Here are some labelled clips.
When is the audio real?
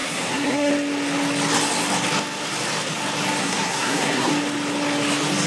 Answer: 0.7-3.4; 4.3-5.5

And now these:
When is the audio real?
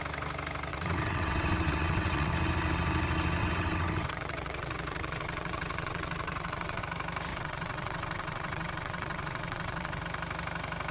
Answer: 0.0-0.7; 2.3-3.4; 6.8-7.3; 10.0-10.9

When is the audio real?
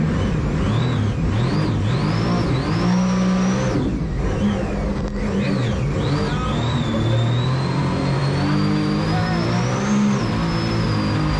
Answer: 0.0-11.4